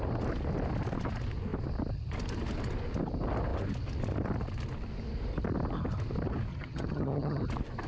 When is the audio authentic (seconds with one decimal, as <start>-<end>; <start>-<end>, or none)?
0.0-6.5; 7.4-7.9